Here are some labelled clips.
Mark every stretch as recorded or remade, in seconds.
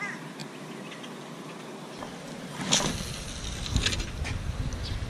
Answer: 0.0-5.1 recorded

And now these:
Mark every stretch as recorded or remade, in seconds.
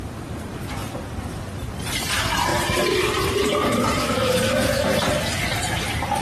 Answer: 0.0-4.0 recorded; 4.0-5.0 remade; 5.0-6.2 recorded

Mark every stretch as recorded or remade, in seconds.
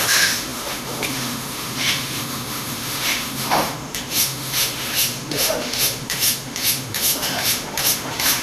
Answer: 0.0-8.4 remade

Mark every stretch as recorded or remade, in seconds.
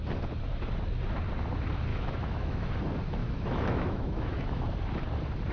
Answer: 0.0-1.9 recorded; 1.9-2.7 remade; 2.7-3.2 recorded; 3.2-4.6 remade; 4.6-5.5 recorded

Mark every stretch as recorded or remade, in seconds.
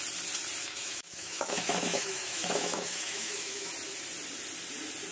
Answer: 0.0-0.6 recorded; 0.6-3.7 remade; 3.7-5.1 recorded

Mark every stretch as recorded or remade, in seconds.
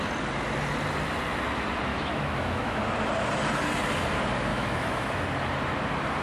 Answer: 0.0-1.9 recorded; 1.9-2.8 remade; 2.8-4.5 recorded; 4.5-5.2 remade; 5.2-6.2 recorded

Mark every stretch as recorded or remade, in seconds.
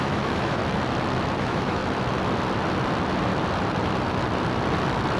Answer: 0.0-0.6 remade; 0.6-1.4 recorded; 1.4-1.8 remade; 1.8-5.2 recorded